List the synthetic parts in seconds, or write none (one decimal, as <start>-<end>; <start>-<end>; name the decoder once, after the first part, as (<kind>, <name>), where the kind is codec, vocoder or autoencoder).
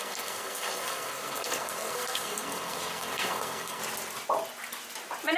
0.0-3.8 (codec, SNAC)